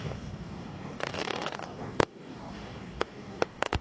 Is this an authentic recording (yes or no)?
no